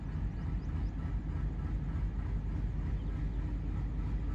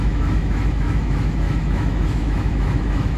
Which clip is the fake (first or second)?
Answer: second